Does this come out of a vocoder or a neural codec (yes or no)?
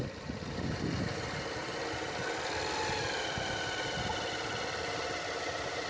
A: no